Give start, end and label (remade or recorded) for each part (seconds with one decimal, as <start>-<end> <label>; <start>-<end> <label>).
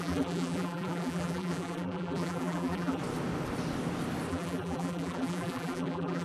0.0-3.0 remade; 3.0-4.3 recorded; 4.3-6.2 remade